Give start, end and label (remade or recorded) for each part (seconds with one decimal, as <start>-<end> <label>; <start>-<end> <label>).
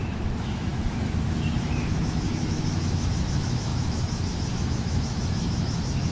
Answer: 0.0-6.1 remade